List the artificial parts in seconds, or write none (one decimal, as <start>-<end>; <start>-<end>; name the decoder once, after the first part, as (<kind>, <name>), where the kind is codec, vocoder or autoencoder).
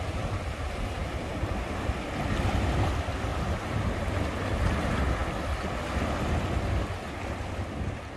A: 3.3-4.6 (vocoder, BigVGAN v2)